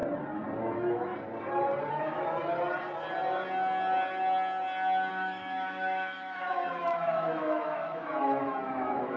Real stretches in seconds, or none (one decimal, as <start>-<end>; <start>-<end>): 0.0-0.6; 1.1-1.9; 2.4-5.1